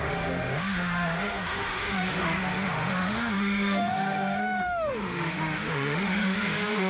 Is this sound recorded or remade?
remade